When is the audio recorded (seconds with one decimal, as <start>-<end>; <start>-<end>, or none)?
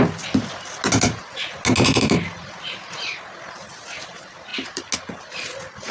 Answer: 0.0-5.9